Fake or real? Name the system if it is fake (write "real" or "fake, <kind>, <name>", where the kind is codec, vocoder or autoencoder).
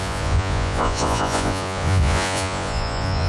fake, vocoder, Vocos